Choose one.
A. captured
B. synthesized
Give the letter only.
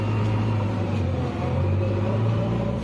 B